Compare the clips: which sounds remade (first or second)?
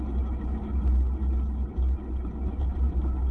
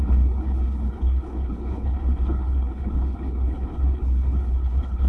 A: second